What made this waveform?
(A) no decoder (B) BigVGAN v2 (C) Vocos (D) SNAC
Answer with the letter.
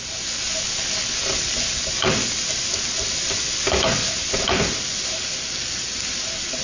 A